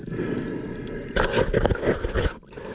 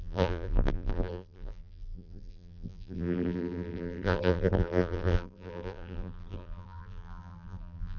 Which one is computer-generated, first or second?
second